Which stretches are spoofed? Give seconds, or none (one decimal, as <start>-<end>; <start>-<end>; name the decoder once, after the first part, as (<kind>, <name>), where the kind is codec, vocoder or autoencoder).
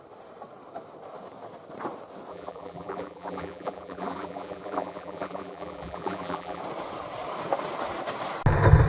2.3-6.6 (vocoder, BigVGAN v2)